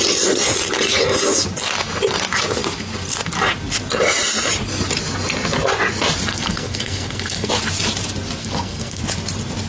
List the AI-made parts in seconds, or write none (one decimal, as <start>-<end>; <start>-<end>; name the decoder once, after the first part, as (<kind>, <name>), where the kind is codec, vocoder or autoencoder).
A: 6.3-7.5 (codec, SNAC); 8.4-9.0